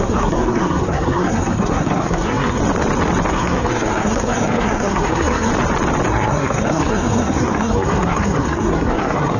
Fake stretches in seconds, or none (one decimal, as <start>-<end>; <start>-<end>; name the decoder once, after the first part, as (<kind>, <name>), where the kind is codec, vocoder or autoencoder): 0.0-2.6 (codec, SNAC); 3.3-5.5; 6.1-9.4